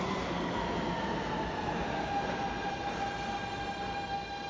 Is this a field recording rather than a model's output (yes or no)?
yes